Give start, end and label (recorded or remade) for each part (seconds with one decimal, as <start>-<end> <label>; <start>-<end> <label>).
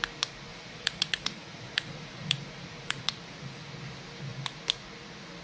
0.0-0.5 recorded; 0.5-3.7 remade; 3.7-5.4 recorded